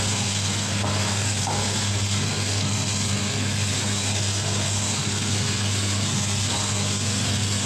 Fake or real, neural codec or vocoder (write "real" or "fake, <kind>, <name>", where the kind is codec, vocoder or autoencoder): fake, codec, SNAC